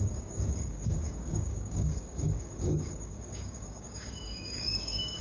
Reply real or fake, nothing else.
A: fake